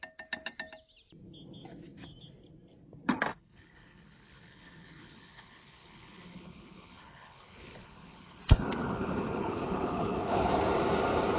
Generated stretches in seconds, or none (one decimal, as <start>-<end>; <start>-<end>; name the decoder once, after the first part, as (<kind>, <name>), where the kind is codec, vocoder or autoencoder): 3.3-8.4 (codec, HILCodec); 8.8-10.5